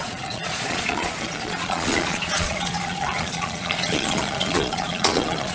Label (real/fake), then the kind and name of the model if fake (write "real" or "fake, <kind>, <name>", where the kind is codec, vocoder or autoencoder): fake, vocoder, Vocos